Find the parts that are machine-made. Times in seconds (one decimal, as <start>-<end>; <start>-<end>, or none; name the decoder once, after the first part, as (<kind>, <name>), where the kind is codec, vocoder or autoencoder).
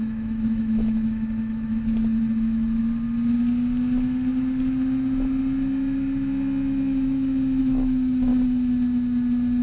0.0-1.7 (autoencoder, DAC-VAE); 2.2-2.8; 7.6-8.3